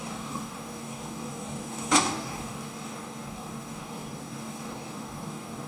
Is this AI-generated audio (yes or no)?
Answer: yes